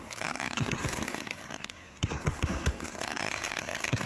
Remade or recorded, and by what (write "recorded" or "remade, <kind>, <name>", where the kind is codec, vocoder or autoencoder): remade, codec, SNAC